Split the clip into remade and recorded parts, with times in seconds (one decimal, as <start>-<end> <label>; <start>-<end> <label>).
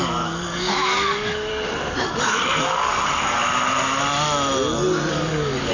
0.0-1.5 remade; 1.5-2.0 recorded; 2.0-3.4 remade; 3.4-5.1 recorded; 5.1-5.7 remade